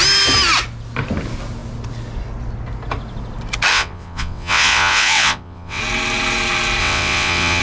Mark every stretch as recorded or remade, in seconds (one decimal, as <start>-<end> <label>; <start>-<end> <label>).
0.0-3.7 recorded; 3.7-5.8 remade; 5.8-6.8 recorded; 6.8-7.6 remade